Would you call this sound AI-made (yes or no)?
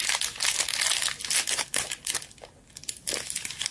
no